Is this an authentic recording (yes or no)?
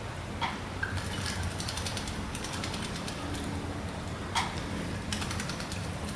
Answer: yes